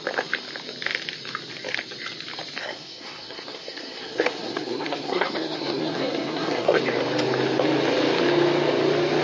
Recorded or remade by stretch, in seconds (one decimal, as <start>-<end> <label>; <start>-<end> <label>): 0.0-2.6 recorded; 2.6-6.8 remade; 6.8-9.2 recorded